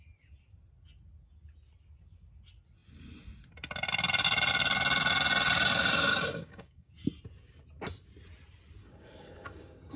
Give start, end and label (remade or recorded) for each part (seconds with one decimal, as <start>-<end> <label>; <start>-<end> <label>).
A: 0.0-6.1 recorded; 6.1-6.9 remade; 6.9-8.8 recorded; 8.8-10.0 remade